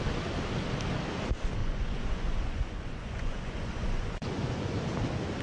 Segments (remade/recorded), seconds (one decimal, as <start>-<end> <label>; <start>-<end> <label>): 0.0-1.6 recorded; 1.6-4.8 remade; 4.8-5.4 recorded